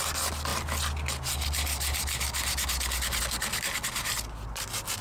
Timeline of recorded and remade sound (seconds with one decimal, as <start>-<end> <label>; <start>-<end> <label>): 0.0-5.0 recorded